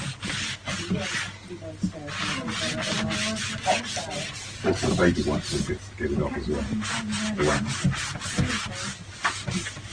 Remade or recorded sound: recorded